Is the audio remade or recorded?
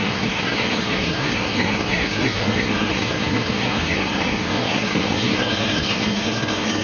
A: remade